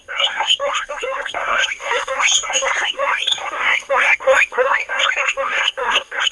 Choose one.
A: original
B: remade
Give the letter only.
B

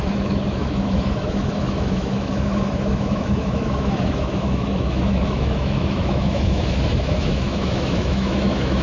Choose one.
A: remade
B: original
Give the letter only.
A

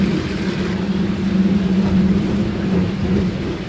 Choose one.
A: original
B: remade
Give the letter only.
A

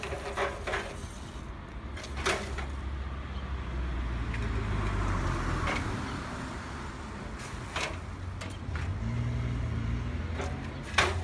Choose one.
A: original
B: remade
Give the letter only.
A